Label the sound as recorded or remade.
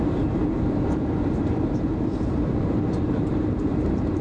remade